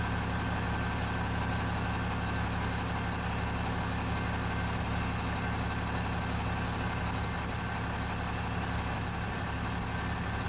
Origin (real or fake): real